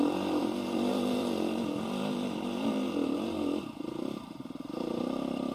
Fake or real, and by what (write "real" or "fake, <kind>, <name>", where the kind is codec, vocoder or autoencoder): fake, vocoder, BigVGAN v2